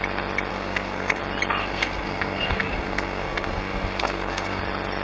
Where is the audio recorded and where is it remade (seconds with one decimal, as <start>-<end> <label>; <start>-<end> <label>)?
0.0-0.5 recorded; 0.5-1.2 remade; 1.2-1.6 recorded; 1.6-4.6 remade; 4.6-5.0 recorded